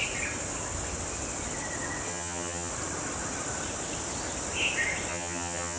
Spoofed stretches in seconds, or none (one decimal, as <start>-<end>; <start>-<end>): 2.1-2.7; 5.1-5.8